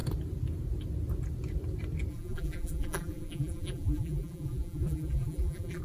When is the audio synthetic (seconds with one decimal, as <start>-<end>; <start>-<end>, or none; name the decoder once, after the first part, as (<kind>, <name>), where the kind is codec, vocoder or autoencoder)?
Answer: 2.1-5.8 (vocoder, BigVGAN v2)